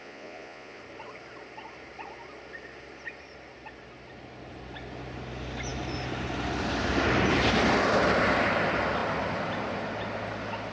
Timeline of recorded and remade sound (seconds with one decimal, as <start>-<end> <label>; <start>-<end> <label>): 0.0-0.8 remade; 0.8-10.7 recorded